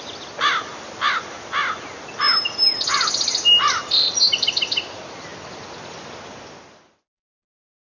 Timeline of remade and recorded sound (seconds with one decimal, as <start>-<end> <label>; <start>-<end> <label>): 0.0-7.9 recorded